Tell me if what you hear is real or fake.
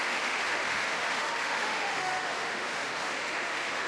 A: fake